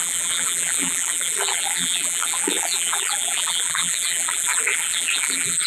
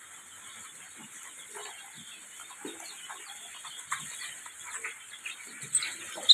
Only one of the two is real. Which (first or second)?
second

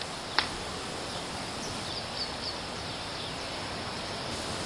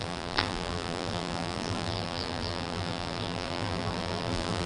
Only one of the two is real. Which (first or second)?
first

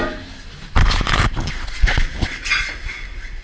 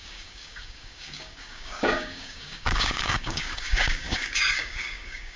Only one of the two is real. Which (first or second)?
first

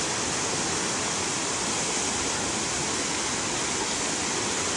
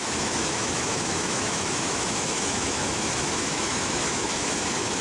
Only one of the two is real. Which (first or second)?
first